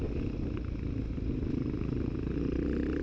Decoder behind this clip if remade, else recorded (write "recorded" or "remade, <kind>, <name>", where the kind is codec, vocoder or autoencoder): recorded